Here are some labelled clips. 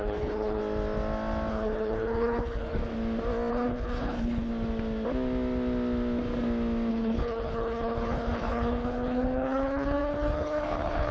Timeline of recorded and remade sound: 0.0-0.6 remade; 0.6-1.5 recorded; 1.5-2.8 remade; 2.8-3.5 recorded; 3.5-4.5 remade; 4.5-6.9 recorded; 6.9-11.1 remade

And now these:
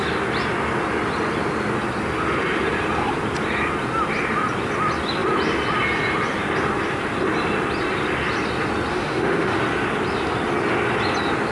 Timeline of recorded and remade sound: 0.0-8.9 recorded; 8.9-9.6 remade; 9.6-11.5 recorded